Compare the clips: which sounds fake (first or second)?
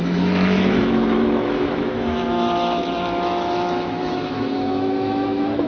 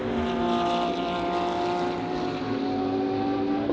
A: first